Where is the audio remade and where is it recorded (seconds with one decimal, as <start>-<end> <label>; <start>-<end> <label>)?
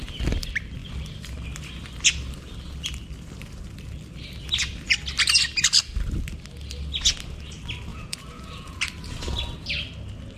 0.0-7.9 recorded; 7.9-8.8 remade; 8.8-10.4 recorded